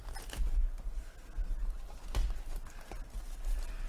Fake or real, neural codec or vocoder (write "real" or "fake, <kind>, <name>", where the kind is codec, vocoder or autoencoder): real